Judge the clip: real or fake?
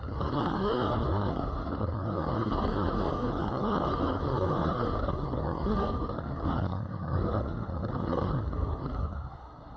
fake